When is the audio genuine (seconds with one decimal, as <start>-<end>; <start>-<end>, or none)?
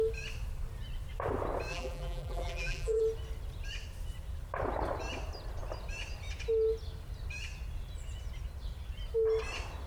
0.0-1.7; 3.0-9.9